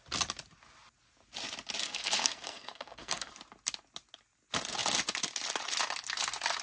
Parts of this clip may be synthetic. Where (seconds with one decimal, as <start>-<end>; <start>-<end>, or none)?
1.8-3.3